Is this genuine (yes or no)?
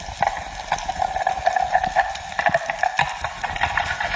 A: yes